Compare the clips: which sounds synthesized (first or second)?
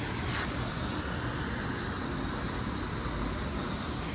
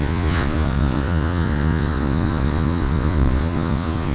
second